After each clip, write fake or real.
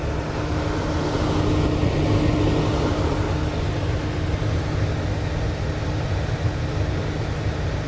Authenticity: real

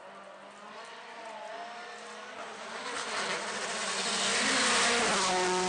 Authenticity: real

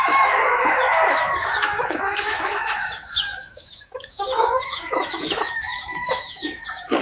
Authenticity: fake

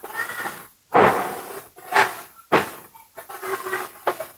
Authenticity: real